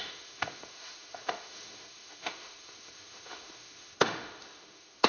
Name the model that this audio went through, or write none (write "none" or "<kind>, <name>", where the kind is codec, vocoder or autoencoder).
autoencoder, DAC-VAE